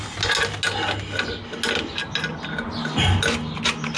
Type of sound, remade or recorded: recorded